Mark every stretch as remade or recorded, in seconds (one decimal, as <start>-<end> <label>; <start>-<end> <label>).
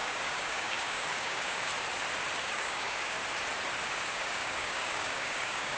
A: 0.0-1.7 remade; 1.7-2.4 recorded; 2.4-3.2 remade; 3.2-3.8 recorded; 3.8-5.8 remade